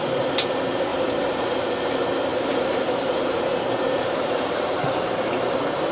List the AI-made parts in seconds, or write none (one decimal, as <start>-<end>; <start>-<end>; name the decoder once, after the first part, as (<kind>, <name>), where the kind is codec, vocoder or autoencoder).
0.9-1.9 (vocoder, BigVGAN v2); 2.3-5.0